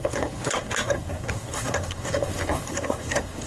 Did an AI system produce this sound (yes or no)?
yes